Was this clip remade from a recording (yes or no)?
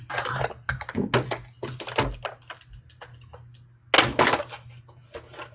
no